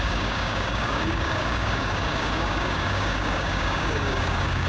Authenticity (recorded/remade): remade